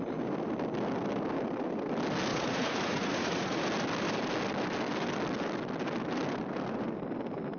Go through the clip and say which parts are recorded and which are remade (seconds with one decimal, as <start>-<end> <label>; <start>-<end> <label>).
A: 0.0-2.3 recorded; 2.3-3.6 remade; 3.6-7.6 recorded